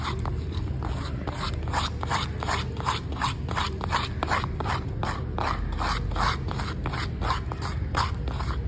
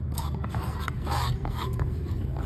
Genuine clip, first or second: first